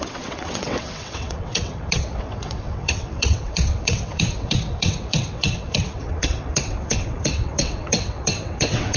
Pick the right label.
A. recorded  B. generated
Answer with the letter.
B